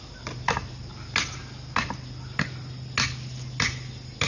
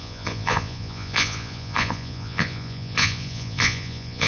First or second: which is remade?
second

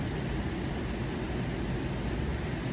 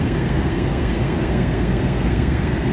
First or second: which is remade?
second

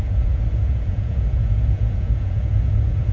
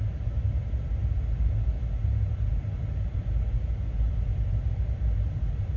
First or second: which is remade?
first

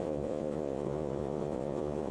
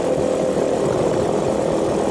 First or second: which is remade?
first